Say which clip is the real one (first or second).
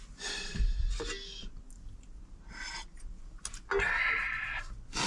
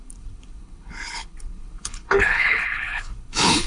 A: first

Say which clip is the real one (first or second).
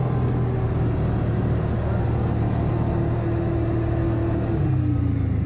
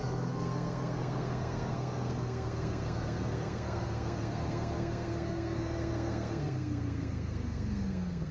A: first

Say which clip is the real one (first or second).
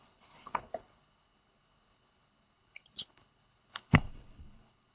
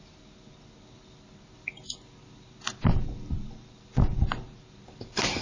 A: second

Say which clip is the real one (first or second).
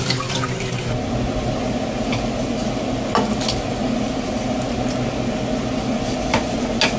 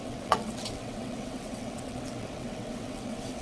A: first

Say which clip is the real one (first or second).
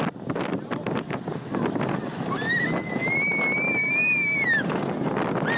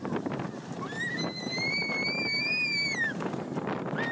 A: first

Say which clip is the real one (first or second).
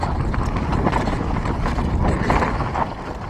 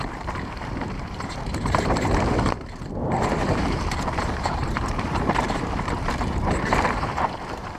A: first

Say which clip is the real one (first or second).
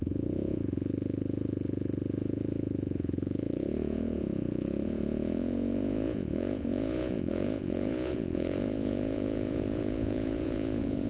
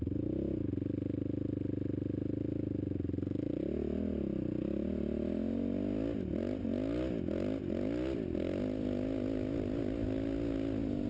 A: second